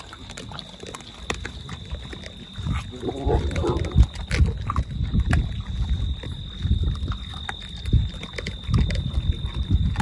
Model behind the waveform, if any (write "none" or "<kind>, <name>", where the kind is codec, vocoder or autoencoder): none